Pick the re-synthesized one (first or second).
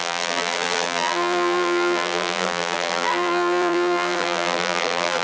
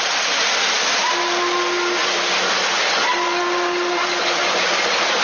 first